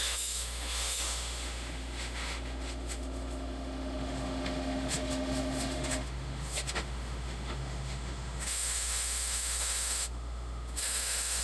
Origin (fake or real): fake